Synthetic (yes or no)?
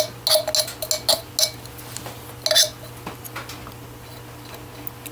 no